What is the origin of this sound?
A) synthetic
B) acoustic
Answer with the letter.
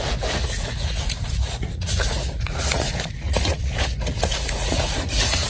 A